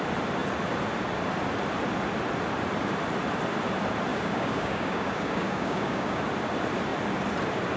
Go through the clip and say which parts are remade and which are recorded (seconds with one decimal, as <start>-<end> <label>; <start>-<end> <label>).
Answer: 0.0-4.1 recorded; 4.1-6.2 remade; 6.2-7.8 recorded